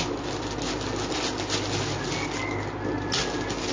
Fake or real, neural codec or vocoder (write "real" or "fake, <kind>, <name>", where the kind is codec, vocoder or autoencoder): real